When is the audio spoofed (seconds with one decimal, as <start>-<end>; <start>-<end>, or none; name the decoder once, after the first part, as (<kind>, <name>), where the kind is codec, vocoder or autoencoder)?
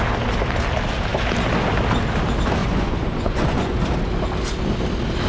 2.6-3.8 (vocoder, Vocos)